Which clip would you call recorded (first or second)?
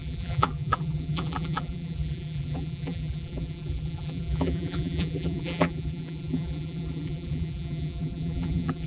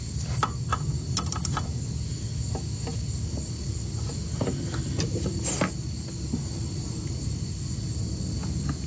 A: second